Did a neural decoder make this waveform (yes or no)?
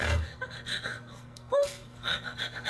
yes